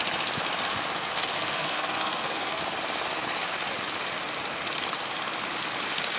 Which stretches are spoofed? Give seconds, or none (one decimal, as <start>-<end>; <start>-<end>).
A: 1.0-2.6